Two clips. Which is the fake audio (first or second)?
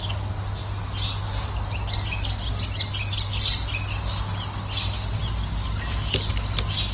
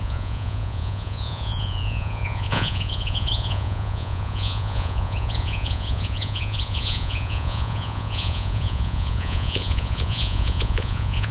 second